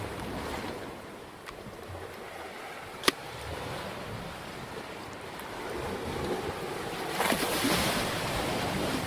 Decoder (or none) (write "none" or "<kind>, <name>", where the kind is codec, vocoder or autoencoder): vocoder, BigVGAN v2